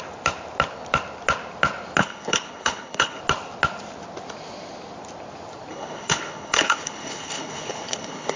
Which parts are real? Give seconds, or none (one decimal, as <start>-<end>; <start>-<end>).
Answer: 0.0-2.0; 3.2-5.7